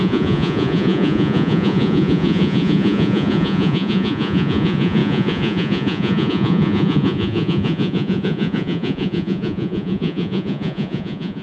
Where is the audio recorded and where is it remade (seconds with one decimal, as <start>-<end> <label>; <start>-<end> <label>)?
0.0-11.4 remade